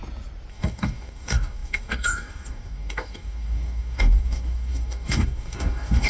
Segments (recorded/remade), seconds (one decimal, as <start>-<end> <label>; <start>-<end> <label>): 0.0-0.5 recorded; 0.5-6.1 remade